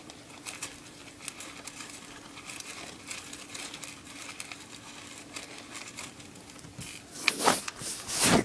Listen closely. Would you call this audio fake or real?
real